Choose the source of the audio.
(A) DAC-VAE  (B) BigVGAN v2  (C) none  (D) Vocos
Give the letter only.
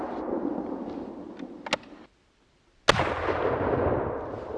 C